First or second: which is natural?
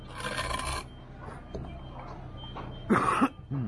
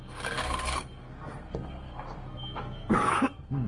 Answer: first